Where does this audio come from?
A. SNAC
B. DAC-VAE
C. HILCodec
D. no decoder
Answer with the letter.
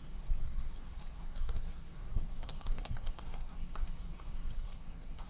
A